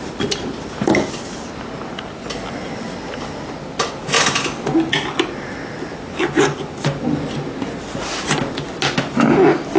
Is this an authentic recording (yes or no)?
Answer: yes